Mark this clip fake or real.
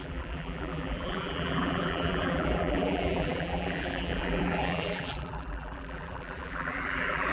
fake